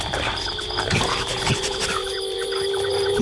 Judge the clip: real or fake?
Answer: fake